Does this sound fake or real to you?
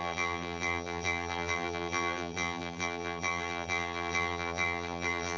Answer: fake